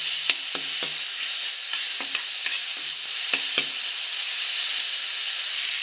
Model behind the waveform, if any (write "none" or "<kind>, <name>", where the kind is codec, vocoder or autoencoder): none